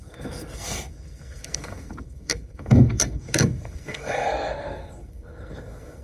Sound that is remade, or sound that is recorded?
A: remade